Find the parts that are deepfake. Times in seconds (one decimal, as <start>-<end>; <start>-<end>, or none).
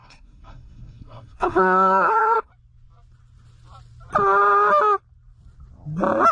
0.0-2.5